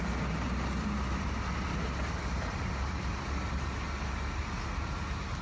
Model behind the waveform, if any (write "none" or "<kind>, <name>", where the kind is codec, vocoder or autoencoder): none